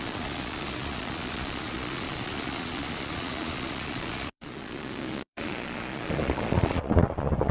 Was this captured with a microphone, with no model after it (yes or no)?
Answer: no